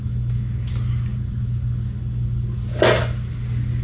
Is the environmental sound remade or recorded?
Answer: recorded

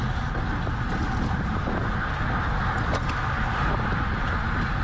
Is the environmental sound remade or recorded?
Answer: recorded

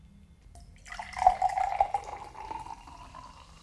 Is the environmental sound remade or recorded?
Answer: remade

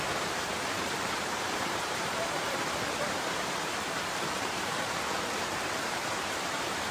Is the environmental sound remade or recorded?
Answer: remade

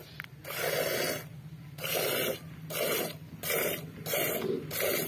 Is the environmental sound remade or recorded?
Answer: recorded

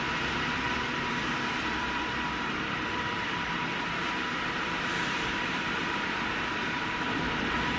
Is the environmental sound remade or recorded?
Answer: remade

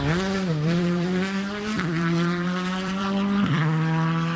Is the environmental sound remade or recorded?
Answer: remade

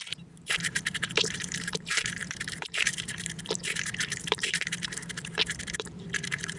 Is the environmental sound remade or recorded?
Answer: remade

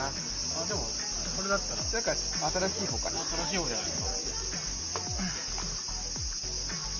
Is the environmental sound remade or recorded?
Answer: recorded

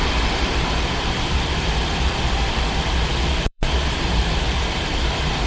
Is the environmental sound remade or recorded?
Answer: remade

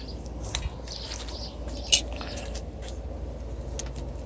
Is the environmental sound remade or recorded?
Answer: recorded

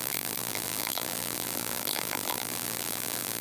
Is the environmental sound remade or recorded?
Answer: remade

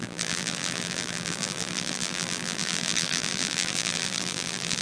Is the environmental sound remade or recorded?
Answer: remade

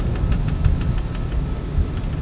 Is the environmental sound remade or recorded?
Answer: recorded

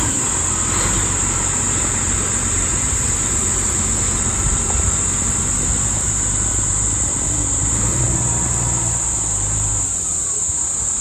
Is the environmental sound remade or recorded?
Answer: remade